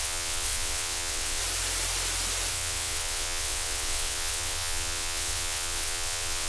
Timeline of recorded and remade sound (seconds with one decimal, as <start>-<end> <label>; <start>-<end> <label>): 0.0-1.4 remade; 1.4-2.5 recorded; 2.5-6.5 remade